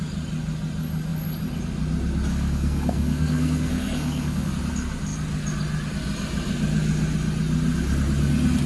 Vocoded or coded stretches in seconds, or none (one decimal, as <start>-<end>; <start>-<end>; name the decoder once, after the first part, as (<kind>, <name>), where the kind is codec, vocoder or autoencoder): 2.3-4.5 (codec, SNAC)